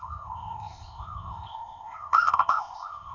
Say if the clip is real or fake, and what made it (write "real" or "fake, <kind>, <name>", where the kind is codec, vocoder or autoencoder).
fake, codec, ZipCodec